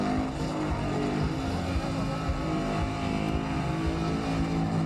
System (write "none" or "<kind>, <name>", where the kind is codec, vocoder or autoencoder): none